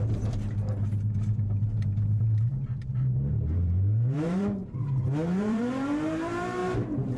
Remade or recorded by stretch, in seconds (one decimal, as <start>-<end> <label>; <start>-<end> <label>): 0.0-4.6 remade; 4.6-5.4 recorded; 5.4-7.2 remade